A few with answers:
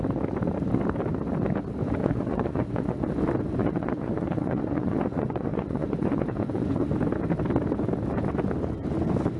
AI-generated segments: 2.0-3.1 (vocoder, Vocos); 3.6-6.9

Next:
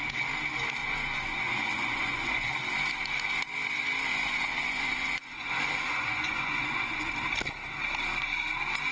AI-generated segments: 0.8-2.5 (vocoder, Vocos); 4.1-7.1

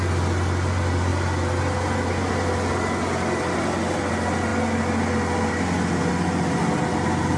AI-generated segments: none

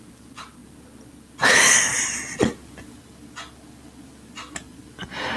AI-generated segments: none

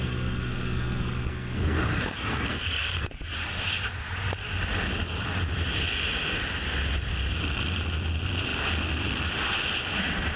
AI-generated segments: 0.0-3.1 (codec, SNAC)